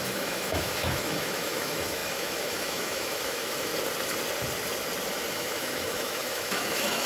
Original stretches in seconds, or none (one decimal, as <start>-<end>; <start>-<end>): 3.7-5.3